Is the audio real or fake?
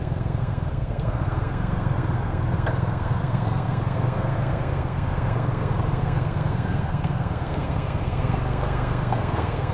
fake